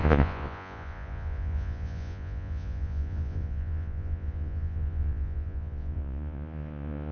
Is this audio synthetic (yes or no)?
yes